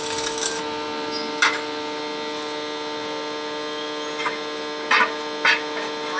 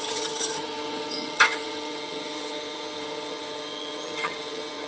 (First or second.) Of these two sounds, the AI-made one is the second